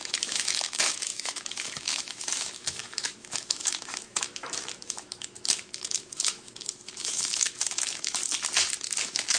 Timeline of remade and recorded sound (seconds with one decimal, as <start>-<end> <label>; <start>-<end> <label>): 0.0-8.2 remade; 8.2-9.0 recorded; 9.0-9.4 remade